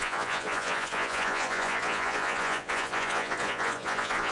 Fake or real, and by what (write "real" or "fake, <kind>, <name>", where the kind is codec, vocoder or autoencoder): fake, vocoder, Vocos